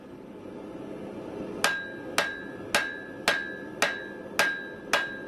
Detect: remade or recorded recorded